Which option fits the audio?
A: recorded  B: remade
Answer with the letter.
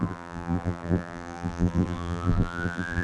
B